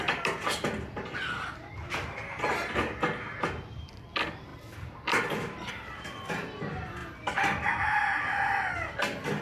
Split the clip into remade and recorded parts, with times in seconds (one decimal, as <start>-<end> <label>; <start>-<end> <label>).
0.0-9.4 recorded